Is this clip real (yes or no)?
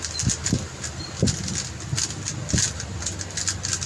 yes